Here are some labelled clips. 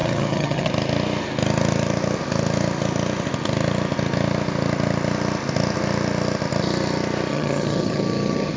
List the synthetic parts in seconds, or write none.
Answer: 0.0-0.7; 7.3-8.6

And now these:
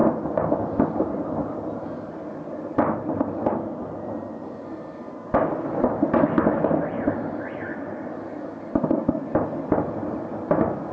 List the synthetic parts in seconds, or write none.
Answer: none

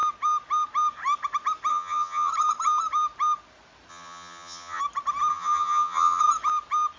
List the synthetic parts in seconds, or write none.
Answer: 1.7-2.3; 3.9-4.8; 5.3-6.2

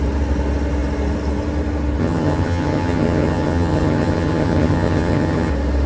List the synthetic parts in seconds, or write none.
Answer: 2.0-5.5